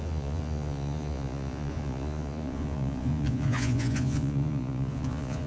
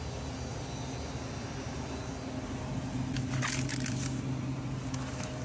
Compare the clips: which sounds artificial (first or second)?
first